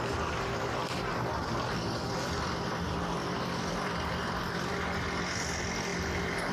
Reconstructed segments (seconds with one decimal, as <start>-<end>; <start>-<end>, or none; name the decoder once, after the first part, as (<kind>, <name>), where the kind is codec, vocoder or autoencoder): 0.8-4.7 (vocoder, BigVGAN v2); 5.9-6.5